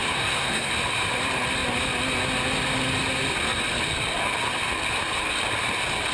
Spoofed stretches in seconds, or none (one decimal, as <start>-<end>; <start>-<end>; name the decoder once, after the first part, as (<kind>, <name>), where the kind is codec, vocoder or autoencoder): 0.0-0.7 (codec, SNAC)